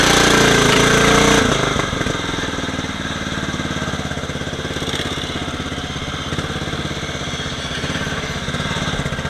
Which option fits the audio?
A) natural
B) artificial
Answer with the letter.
A